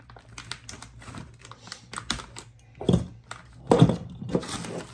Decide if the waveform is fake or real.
real